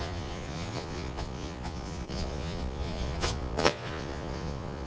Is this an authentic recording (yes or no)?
no